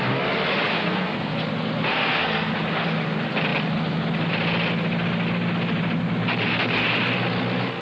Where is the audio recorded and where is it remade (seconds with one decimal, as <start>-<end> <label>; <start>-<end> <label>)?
0.0-0.7 recorded; 0.7-1.3 remade; 1.3-1.9 recorded; 1.9-2.5 remade; 2.5-7.8 recorded